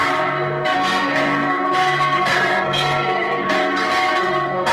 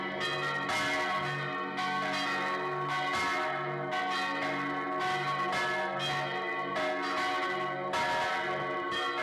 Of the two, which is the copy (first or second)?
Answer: first